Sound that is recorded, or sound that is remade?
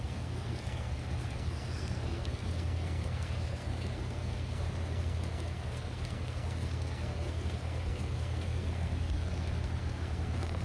remade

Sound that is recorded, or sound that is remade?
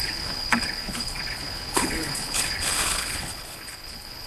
remade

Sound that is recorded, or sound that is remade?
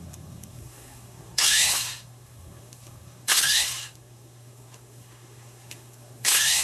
remade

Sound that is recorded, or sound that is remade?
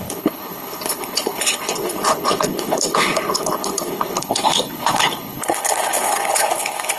remade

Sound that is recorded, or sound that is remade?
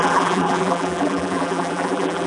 remade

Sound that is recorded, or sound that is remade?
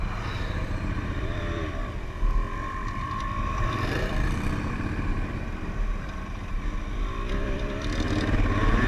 remade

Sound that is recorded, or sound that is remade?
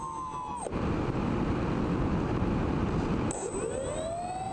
recorded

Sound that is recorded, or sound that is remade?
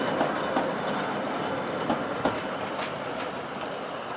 recorded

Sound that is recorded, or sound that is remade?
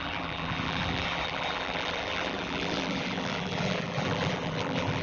remade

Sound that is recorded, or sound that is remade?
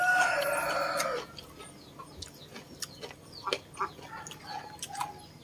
recorded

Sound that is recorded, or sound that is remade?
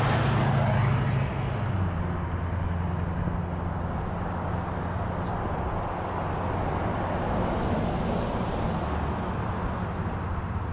recorded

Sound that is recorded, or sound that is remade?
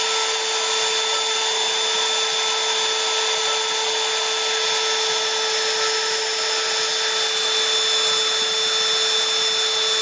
recorded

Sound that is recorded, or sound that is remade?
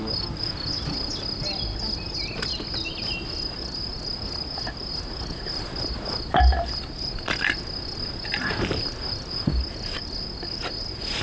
recorded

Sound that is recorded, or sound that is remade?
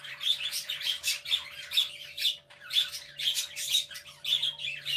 recorded